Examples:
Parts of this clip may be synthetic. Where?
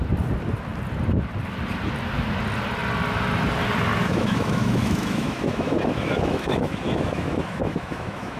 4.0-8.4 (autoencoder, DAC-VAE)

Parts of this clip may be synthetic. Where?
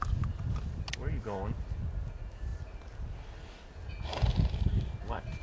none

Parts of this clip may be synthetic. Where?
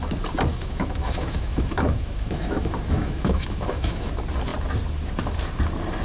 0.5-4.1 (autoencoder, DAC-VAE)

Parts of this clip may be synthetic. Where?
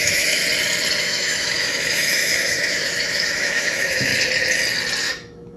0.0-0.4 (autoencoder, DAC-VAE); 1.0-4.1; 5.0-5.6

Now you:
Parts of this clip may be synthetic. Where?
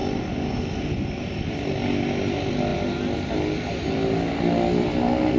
none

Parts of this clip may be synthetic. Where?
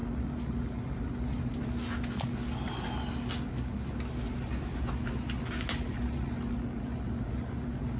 none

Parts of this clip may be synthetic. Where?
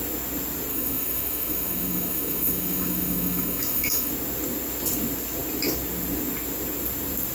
0.7-4.1 (autoencoder, DAC-VAE)